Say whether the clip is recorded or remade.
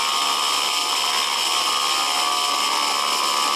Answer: recorded